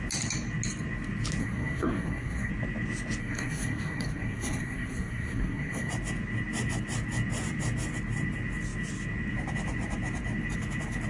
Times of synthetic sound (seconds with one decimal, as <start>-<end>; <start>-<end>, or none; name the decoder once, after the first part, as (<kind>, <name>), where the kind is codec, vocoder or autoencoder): 1.4-2.5 (codec, SNAC); 3.2-5.9